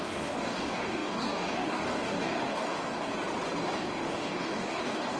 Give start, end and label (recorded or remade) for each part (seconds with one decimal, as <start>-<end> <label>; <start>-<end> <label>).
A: 0.0-3.1 remade; 3.1-3.8 recorded; 3.8-5.2 remade